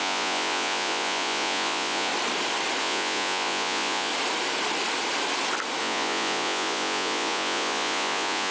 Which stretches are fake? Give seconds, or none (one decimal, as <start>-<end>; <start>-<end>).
0.0-2.1; 2.8-4.1; 5.8-8.5